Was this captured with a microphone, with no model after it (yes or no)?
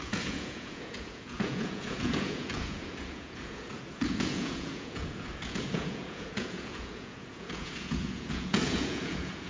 no